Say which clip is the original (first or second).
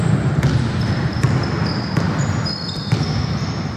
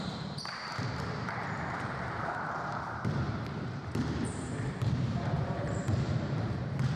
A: first